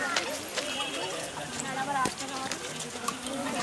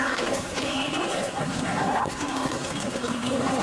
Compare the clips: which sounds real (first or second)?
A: first